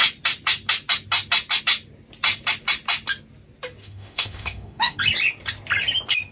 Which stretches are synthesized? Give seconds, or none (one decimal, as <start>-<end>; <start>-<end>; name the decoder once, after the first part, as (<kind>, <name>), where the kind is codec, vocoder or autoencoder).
3.8-5.0 (autoencoder, DAC-VAE)